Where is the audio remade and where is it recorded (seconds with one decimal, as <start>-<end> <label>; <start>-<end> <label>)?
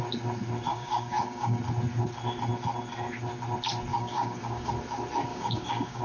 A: 0.0-0.7 recorded; 0.7-1.6 remade; 1.6-3.9 recorded; 3.9-4.7 remade; 4.7-5.3 recorded; 5.3-6.0 remade